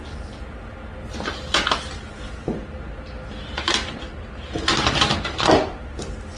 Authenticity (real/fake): real